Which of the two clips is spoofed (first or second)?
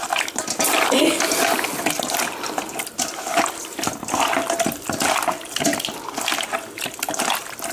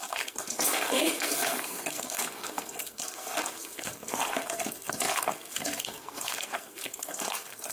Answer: second